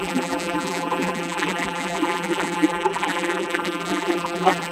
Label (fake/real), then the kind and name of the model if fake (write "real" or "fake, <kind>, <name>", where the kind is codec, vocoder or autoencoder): fake, vocoder, BigVGAN v2